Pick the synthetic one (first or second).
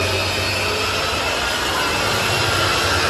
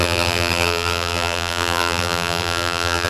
second